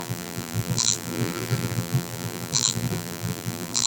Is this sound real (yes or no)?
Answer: no